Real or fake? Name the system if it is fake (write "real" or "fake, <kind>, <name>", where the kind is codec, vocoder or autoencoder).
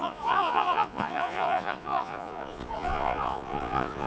fake, vocoder, Vocos